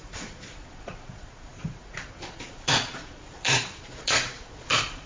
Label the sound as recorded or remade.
remade